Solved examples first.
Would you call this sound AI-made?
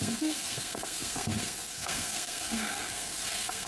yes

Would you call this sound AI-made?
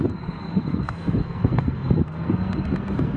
yes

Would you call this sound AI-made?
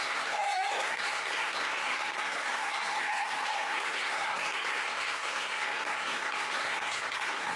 yes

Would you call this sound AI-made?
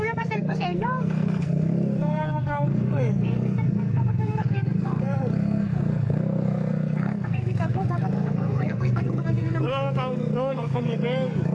yes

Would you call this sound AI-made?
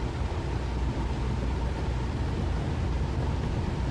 no